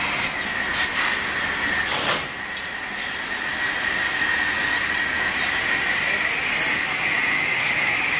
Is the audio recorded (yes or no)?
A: yes